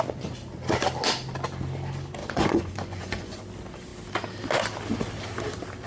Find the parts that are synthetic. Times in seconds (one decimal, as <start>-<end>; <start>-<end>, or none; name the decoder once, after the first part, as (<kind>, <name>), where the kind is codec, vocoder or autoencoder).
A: 2.2-3.4 (vocoder, Vocos)